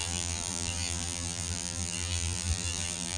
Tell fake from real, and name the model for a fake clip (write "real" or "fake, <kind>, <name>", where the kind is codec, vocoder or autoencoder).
fake, vocoder, BigVGAN v2